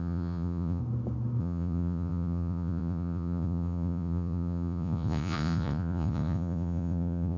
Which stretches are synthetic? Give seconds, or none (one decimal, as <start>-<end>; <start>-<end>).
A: 0.0-0.8; 1.4-7.4